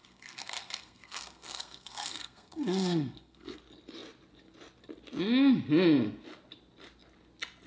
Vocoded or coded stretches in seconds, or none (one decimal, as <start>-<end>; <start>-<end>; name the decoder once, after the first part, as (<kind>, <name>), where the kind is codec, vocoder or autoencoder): 0.0-3.6 (codec, SNAC)